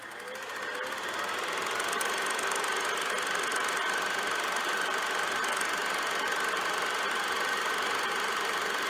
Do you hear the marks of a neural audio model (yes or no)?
no